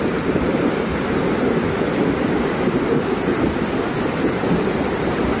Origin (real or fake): fake